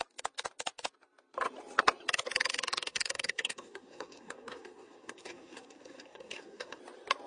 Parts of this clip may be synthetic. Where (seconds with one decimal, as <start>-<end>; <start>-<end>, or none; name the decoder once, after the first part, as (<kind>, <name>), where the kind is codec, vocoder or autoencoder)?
2.7-6.8 (codec, SNAC)